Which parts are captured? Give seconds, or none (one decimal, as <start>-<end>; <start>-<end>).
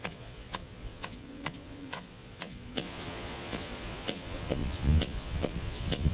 none